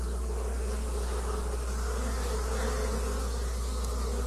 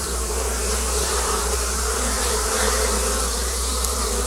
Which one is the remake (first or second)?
second